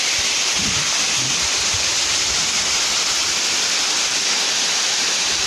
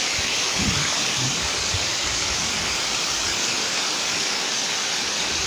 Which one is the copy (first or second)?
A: second